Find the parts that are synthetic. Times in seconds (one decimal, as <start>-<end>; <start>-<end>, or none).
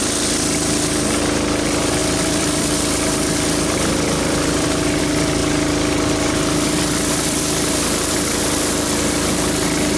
2.0-5.0; 5.4-7.4